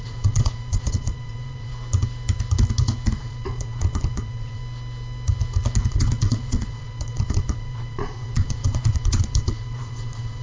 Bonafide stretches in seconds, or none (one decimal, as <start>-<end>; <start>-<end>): 1.7-3.1; 4.6-5.9